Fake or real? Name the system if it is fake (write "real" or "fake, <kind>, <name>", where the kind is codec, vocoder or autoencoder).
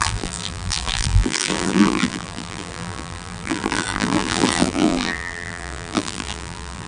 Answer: fake, vocoder, BigVGAN v2